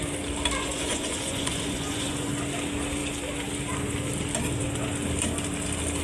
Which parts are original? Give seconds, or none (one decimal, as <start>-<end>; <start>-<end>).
0.0-0.6; 2.3-6.0